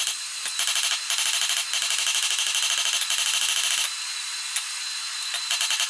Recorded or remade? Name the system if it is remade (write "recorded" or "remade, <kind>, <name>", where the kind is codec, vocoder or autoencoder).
recorded